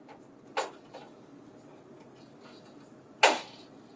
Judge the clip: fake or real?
real